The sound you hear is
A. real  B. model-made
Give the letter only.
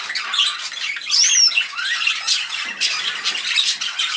A